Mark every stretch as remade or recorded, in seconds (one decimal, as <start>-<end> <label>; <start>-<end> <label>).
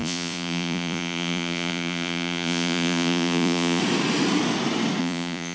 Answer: 0.0-3.8 remade; 3.8-5.0 recorded; 5.0-5.5 remade